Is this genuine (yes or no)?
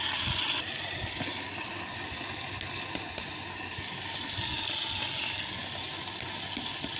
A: yes